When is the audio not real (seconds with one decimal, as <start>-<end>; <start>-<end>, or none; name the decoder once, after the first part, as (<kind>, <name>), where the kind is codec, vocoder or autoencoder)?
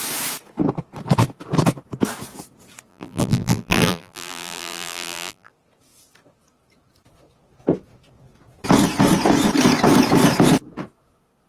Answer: 2.9-5.5 (vocoder, BigVGAN v2)